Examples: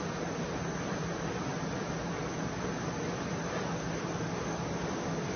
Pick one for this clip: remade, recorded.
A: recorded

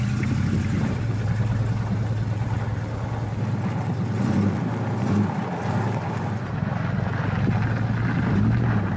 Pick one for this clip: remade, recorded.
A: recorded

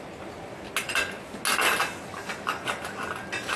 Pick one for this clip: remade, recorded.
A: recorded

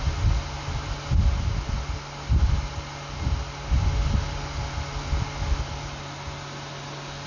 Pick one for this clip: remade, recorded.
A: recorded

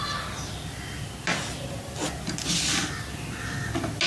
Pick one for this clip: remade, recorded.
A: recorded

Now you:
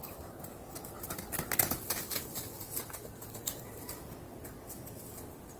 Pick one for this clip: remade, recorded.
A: recorded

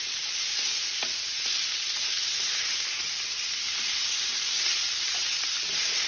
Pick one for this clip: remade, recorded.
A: remade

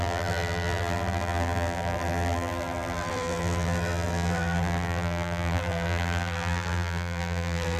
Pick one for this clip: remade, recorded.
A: remade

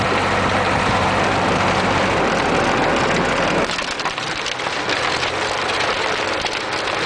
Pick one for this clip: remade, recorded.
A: recorded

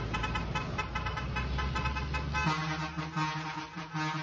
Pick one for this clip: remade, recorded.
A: recorded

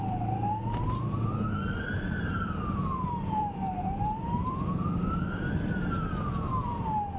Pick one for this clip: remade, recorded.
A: remade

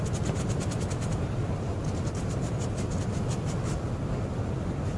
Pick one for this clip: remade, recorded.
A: recorded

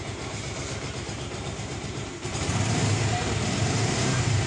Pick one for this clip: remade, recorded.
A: remade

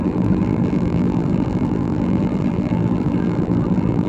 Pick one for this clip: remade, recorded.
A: remade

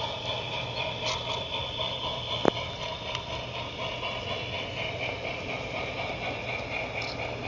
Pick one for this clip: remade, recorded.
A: recorded